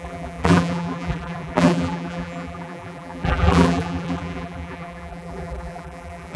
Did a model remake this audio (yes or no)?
yes